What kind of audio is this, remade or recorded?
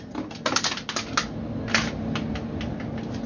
recorded